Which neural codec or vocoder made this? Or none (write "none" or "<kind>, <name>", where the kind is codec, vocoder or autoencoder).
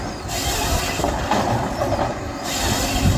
none